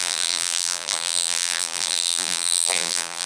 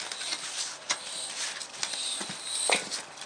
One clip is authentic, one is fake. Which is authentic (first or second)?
second